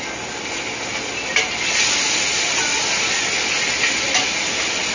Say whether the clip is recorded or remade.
recorded